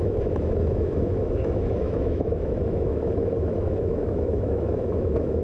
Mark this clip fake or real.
fake